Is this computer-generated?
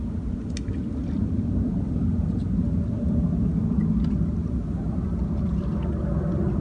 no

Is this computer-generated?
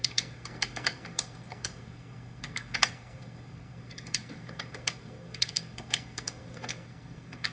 yes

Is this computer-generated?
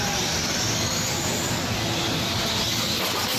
no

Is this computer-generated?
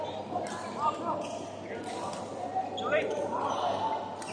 no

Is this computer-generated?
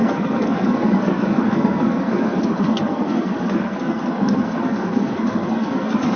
yes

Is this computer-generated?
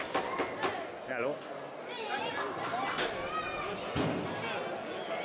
no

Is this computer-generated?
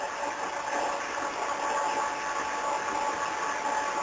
no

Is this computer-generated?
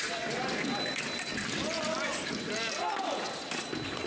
no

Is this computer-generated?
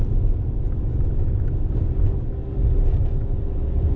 no